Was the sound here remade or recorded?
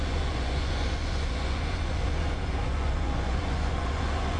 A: remade